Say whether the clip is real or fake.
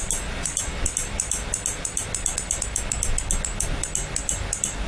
real